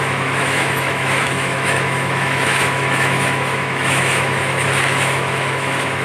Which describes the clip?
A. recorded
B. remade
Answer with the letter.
B